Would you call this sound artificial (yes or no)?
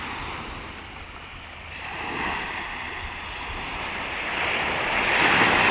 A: no